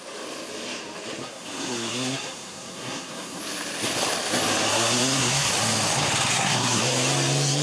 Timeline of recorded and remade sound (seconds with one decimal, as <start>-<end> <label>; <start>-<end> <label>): 0.0-1.2 recorded; 1.2-3.4 remade; 3.4-4.7 recorded; 4.7-5.5 remade; 5.5-6.3 recorded; 6.3-6.8 remade; 6.8-7.6 recorded